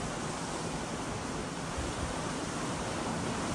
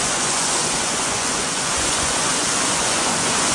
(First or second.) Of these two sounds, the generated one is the second